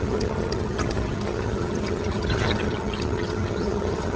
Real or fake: fake